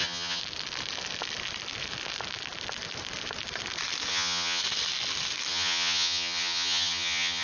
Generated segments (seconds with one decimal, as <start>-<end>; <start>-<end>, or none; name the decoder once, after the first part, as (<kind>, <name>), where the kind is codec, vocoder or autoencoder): 0.0-0.4 (vocoder, HiFi-GAN); 4.1-4.6; 5.5-7.4